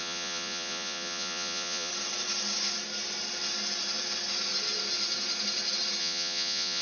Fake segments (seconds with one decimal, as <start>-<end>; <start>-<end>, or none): 0.0-1.9; 6.0-6.8